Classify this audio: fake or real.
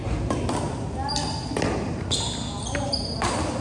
real